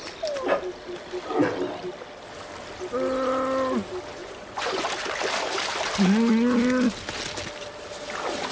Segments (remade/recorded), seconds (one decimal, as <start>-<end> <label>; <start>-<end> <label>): 0.0-4.2 recorded; 4.2-4.8 remade; 4.8-8.5 recorded